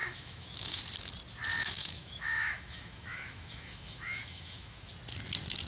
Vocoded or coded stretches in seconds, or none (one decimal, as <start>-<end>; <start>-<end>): 0.0-0.8; 1.5-4.9